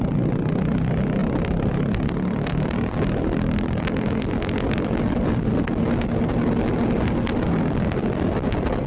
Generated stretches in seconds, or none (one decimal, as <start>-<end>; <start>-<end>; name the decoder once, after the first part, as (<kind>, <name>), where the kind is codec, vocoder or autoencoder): none